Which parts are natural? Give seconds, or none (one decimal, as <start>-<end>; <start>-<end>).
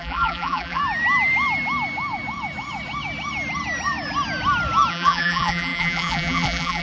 0.8-4.9